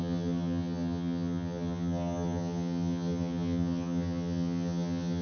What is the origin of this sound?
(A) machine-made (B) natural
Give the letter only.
A